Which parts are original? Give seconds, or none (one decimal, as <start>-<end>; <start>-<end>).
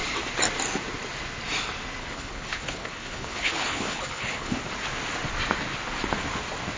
0.0-2.0; 4.6-6.8